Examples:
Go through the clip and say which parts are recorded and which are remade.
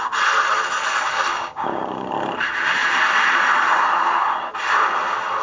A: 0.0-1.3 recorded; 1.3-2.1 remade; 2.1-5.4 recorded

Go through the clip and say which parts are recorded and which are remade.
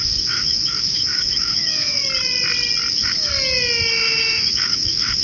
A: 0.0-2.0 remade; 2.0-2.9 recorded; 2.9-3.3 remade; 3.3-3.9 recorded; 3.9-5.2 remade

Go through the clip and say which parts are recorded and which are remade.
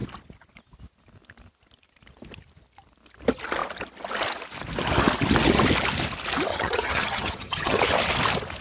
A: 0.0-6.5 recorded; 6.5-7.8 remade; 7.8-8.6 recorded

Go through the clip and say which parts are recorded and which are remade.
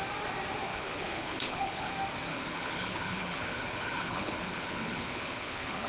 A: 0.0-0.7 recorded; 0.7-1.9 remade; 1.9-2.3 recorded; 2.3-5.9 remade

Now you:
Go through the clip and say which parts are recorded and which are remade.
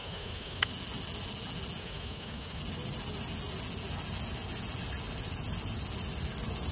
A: 0.0-0.7 remade; 0.7-1.8 recorded; 1.8-2.6 remade; 2.6-6.7 recorded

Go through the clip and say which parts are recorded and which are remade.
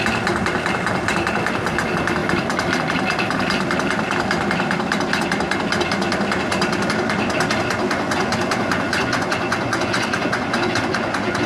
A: 0.0-7.8 recorded; 7.8-11.5 remade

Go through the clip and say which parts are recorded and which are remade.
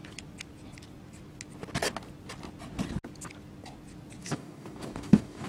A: 0.0-4.2 recorded; 4.2-5.5 remade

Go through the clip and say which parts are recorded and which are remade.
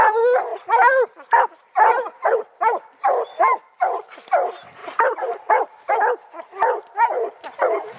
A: 0.0-0.5 recorded; 0.5-2.6 remade; 2.6-4.8 recorded; 4.8-5.9 remade; 5.9-8.0 recorded